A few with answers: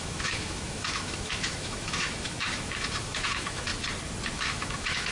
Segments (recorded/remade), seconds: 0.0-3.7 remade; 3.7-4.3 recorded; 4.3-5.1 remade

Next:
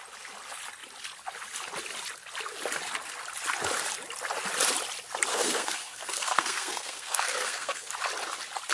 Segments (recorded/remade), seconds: 0.0-5.3 recorded; 5.3-7.9 remade; 7.9-8.7 recorded

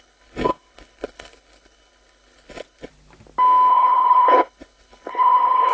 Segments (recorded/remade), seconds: 0.0-2.9 remade; 2.9-3.7 recorded; 3.7-5.7 remade

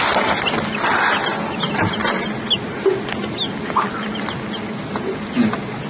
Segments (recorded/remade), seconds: 0.0-5.9 recorded